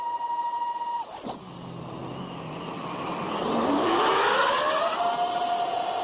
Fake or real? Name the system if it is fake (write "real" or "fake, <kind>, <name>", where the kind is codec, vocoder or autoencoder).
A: real